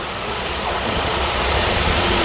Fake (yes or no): yes